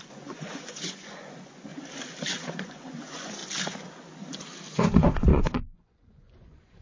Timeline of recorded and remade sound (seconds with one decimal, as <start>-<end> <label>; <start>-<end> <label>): 0.0-1.7 remade; 1.7-2.3 recorded; 2.3-3.4 remade; 3.4-4.7 recorded; 4.7-6.8 remade